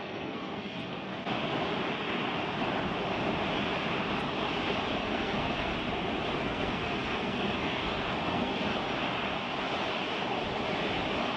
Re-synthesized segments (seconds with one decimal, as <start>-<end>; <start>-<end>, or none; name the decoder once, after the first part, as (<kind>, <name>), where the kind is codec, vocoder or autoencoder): 0.0-1.1 (codec, SNAC); 5.0-5.7; 6.4-8.7